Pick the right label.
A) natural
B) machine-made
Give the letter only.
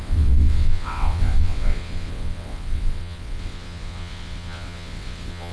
B